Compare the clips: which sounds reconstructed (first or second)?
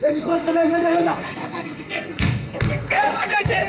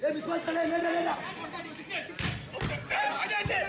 first